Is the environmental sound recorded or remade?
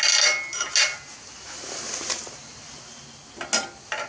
recorded